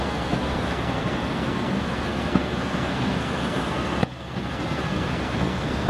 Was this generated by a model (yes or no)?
yes